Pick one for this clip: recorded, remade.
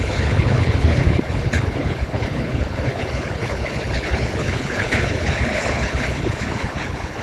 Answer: remade